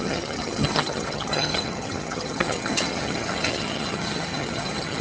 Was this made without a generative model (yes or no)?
no